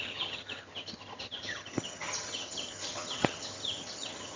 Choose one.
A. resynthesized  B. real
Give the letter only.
A